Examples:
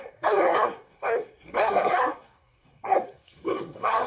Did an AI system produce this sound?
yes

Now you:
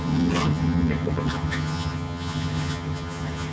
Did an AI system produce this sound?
yes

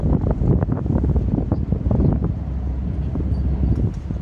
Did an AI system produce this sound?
no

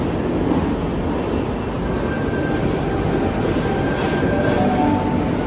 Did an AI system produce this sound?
no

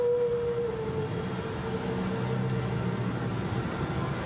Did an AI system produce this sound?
no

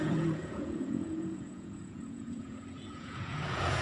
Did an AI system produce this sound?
yes